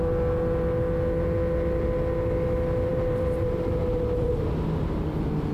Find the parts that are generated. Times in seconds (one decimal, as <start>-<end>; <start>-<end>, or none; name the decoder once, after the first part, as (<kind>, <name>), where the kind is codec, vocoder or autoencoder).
2.9-4.3 (vocoder, BigVGAN v2)